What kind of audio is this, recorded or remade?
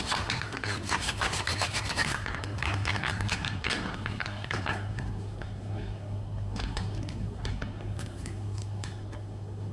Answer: remade